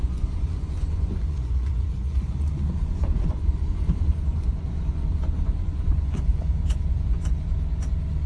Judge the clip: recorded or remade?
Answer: remade